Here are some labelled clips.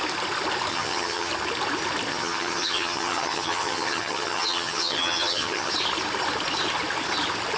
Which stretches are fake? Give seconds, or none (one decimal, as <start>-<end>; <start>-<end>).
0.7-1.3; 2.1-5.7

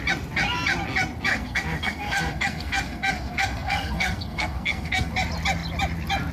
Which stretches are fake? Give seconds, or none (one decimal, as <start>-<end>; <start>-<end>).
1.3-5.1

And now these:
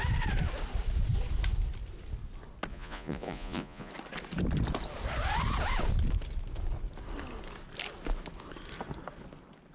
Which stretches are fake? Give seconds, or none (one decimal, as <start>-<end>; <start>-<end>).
2.7-3.9